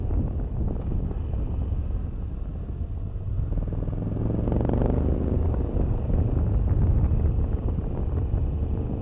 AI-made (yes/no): no